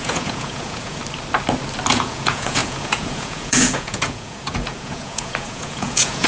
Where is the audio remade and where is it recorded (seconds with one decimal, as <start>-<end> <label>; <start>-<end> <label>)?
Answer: 0.0-1.0 remade; 1.0-1.9 recorded; 1.9-6.3 remade